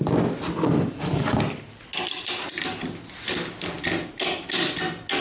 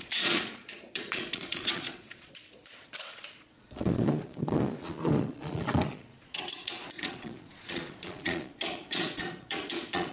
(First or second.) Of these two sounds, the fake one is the second